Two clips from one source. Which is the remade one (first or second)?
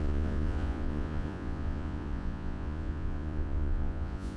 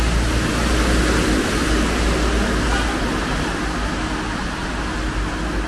first